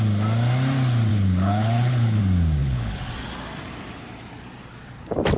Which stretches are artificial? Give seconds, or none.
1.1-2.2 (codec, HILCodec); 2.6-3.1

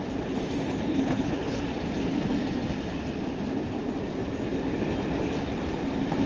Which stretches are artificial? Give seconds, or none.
0.9-1.6 (codec, HILCodec)

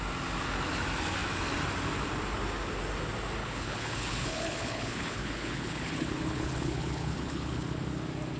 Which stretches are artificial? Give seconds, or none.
3.4-8.0 (codec, HILCodec)

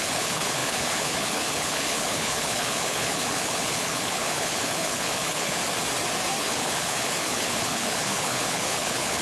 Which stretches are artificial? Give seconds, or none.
0.0-5.6 (codec, HILCodec); 6.4-9.2

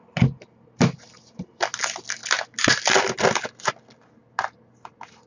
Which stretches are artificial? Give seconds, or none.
none

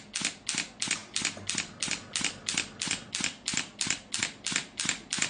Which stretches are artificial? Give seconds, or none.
none

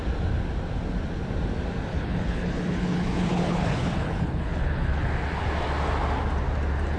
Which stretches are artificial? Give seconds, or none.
1.9-5.1 (codec, HILCodec)